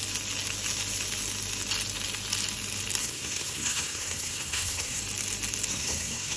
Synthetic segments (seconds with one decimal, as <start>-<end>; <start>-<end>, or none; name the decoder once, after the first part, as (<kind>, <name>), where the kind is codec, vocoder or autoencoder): 3.0-5.0 (codec, SNAC); 5.7-6.4